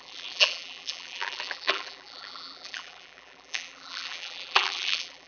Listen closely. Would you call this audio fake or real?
fake